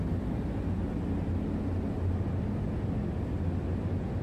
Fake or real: real